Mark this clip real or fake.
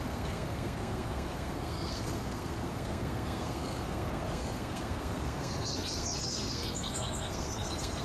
fake